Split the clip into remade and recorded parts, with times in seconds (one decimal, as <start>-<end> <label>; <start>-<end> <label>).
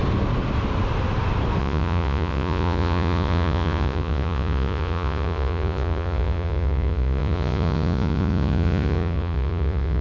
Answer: 0.0-1.6 recorded; 1.6-10.0 remade